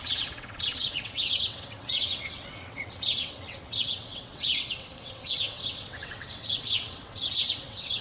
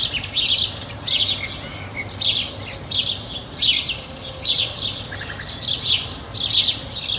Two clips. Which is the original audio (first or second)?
second